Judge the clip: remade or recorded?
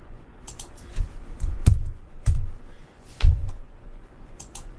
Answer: remade